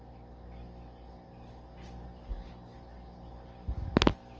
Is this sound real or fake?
real